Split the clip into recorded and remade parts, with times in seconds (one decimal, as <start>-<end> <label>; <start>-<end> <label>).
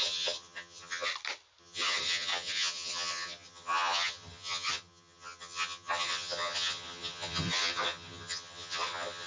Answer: 0.0-1.1 remade; 1.1-1.6 recorded; 1.6-9.3 remade